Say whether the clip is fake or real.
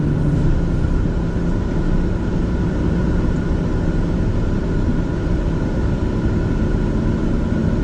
real